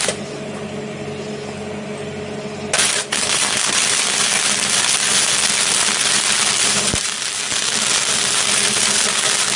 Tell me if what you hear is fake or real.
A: real